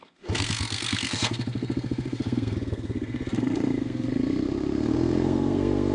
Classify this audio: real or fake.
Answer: fake